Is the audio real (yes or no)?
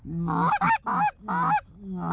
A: yes